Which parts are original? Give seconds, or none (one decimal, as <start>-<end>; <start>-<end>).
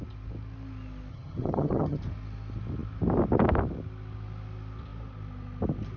0.0-1.1; 2.0-6.0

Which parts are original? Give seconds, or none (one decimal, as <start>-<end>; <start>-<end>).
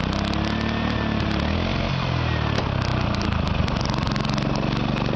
0.0-5.2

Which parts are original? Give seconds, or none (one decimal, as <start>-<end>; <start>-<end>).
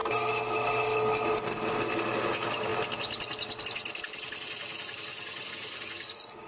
0.0-6.5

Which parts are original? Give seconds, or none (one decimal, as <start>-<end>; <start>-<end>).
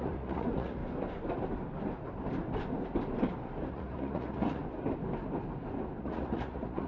0.8-3.7; 4.6-6.0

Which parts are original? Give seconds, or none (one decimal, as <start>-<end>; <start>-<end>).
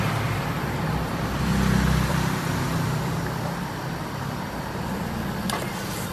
1.5-2.1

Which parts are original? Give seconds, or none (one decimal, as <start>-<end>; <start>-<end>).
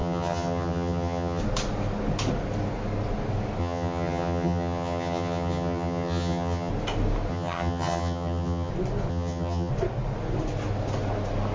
1.4-3.6; 6.7-7.3; 8.7-9.1; 9.7-11.5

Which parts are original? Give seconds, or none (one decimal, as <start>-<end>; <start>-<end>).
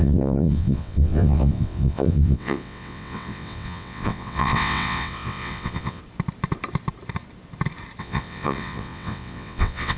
6.0-8.0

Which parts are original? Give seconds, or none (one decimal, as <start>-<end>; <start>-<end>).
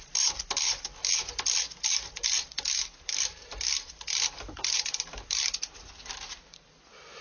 1.0-2.4